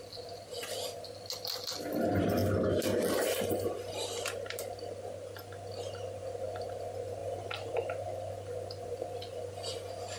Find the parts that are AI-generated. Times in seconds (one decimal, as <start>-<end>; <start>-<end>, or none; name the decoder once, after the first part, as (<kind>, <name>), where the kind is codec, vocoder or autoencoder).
none